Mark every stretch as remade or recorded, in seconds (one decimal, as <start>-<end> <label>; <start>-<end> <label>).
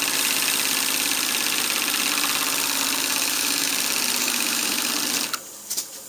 0.0-3.1 recorded; 3.1-3.7 remade; 3.7-4.2 recorded; 4.2-4.9 remade; 4.9-6.1 recorded